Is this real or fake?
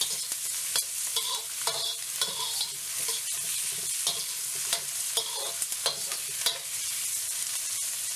real